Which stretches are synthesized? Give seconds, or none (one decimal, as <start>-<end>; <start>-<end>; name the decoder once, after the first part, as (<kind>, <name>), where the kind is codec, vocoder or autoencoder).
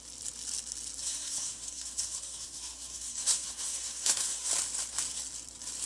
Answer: 1.0-4.5 (codec, SNAC)